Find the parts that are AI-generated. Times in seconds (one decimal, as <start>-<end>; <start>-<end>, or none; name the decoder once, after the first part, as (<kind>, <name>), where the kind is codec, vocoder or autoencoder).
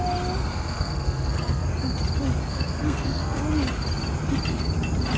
0.5-1.7 (codec, SNAC); 2.5-3.4